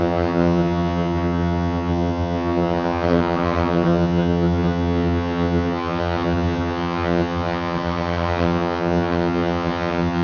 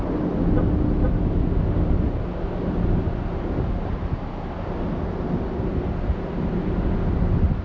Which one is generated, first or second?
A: first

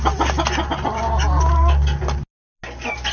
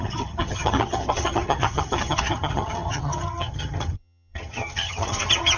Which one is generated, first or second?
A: second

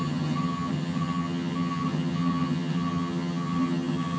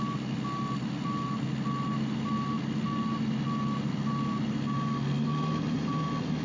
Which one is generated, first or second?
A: first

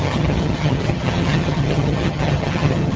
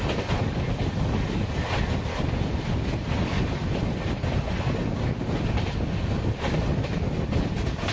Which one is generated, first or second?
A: first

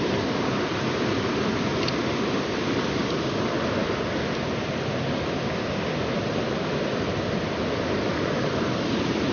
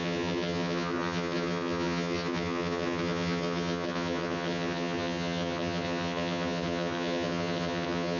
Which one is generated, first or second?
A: second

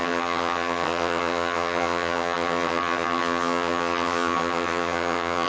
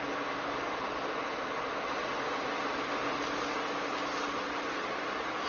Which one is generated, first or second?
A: first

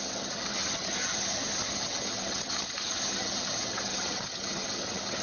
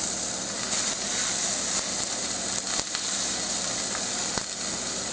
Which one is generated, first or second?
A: first